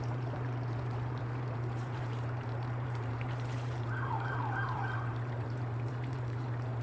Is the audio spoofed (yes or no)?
yes